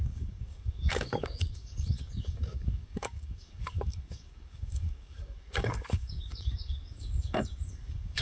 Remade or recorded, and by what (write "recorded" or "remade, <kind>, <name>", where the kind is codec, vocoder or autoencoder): remade, codec, DAC